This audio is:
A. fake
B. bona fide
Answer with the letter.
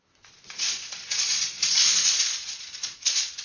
A